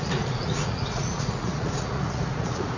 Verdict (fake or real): fake